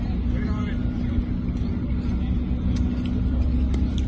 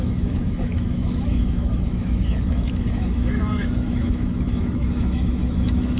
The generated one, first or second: second